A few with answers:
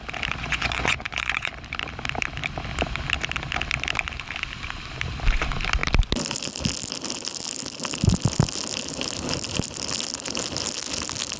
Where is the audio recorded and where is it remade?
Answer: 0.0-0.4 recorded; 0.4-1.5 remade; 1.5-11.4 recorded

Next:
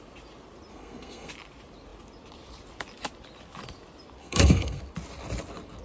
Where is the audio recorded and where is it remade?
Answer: 0.0-0.7 recorded; 0.7-1.3 remade; 1.3-4.2 recorded; 4.2-4.8 remade; 4.8-5.8 recorded

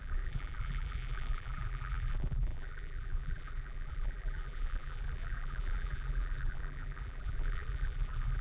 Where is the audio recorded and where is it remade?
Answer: 0.0-8.4 remade